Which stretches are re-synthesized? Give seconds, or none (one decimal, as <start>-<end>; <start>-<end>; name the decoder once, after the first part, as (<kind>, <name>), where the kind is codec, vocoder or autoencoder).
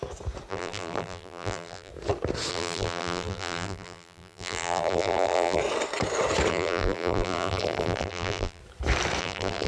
0.5-1.9 (vocoder, BigVGAN v2); 2.5-5.6; 6.5-8.6; 9.2-9.7